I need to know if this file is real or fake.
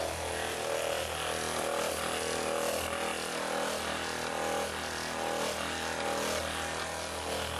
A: real